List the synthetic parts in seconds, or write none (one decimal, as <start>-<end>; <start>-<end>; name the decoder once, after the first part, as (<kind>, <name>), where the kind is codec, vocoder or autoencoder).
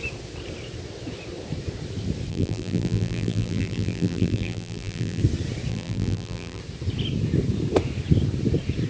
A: 2.3-5.2 (vocoder, BigVGAN v2); 5.7-6.6